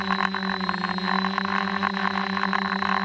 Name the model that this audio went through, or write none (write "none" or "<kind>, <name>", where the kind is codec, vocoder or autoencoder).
none